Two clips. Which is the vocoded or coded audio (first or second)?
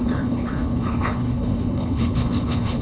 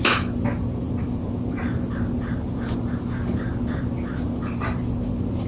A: first